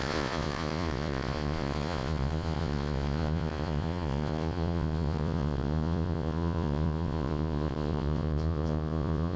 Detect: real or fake fake